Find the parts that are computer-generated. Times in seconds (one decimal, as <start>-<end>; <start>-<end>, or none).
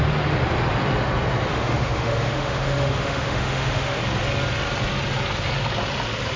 1.5-4.0